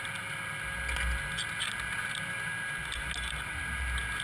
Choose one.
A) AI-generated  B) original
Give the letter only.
B